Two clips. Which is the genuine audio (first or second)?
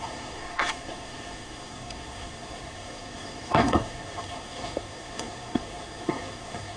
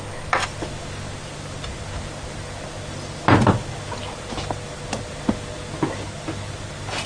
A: second